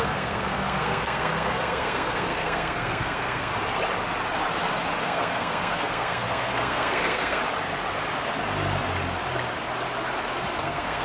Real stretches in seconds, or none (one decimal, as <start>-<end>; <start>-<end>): 3.5-5.0; 7.4-10.6